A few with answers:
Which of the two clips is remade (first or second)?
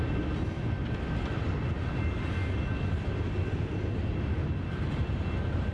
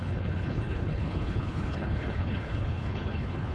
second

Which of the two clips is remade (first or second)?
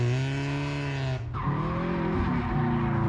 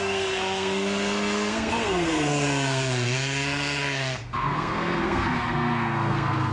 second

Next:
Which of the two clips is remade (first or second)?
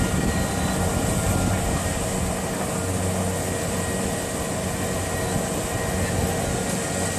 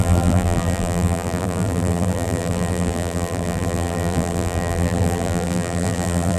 second